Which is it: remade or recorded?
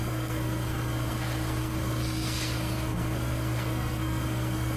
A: remade